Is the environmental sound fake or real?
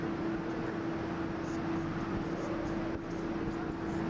real